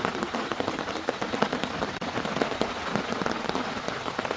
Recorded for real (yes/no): yes